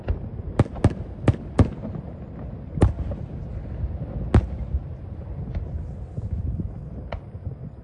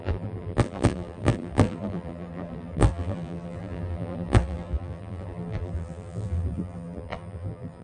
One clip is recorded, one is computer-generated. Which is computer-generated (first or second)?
second